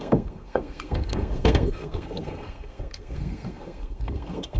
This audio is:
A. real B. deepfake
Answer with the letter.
B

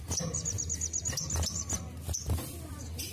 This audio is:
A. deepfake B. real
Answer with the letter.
B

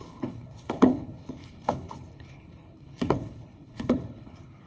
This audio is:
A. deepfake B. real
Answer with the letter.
A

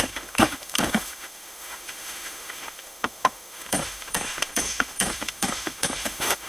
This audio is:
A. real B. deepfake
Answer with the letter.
B